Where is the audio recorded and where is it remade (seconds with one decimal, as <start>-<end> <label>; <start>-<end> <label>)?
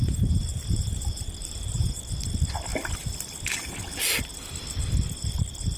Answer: 0.0-0.5 recorded; 0.5-2.0 remade; 2.0-5.8 recorded